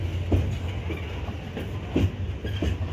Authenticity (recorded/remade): recorded